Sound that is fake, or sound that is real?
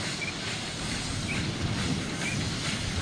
real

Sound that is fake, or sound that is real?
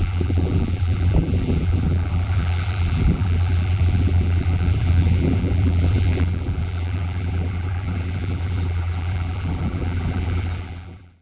fake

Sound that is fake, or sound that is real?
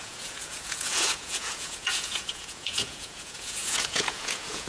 fake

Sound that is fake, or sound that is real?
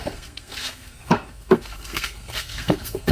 fake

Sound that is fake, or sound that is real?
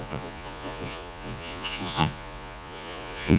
fake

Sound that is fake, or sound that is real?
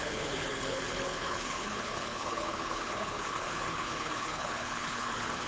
fake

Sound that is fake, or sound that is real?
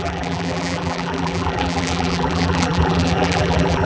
fake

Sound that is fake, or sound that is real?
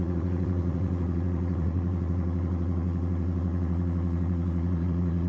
fake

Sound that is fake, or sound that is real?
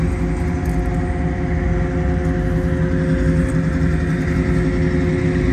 real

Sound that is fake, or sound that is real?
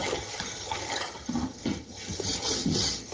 fake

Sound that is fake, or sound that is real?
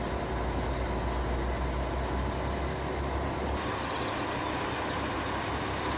real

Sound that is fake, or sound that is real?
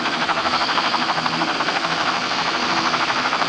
fake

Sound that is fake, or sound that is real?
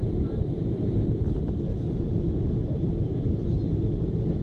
real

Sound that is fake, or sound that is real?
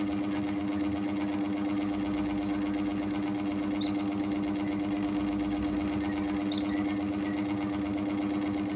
real